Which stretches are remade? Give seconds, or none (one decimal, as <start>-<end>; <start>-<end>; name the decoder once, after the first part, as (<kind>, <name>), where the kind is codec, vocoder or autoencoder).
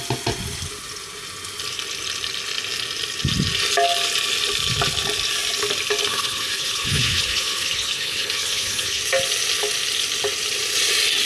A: 6.1-9.0 (codec, HILCodec)